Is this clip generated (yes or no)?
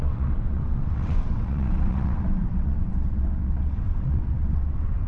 yes